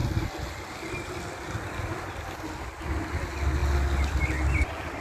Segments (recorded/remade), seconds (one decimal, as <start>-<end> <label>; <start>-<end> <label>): 0.0-5.0 recorded